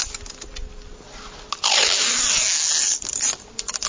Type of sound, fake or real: real